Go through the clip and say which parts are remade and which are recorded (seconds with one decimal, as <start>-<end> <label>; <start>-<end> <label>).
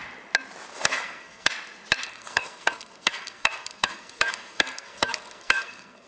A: 0.0-0.7 recorded; 0.7-1.5 remade; 1.5-2.0 recorded; 2.0-6.1 remade